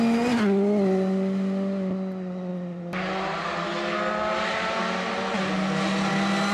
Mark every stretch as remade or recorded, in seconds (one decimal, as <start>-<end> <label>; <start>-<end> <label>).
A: 0.0-6.5 recorded